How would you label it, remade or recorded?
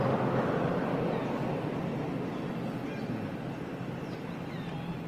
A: recorded